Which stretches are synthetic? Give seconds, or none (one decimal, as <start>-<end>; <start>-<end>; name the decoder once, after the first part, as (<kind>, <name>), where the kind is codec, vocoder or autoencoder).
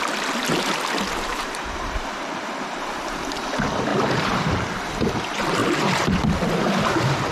1.3-3.4 (vocoder, BigVGAN v2); 3.9-4.5; 5.6-6.8